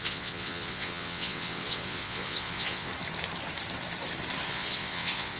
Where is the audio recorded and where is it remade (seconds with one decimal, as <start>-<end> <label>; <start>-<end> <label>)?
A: 0.0-2.9 remade; 2.9-4.5 recorded; 4.5-5.4 remade